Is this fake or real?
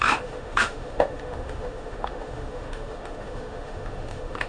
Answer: fake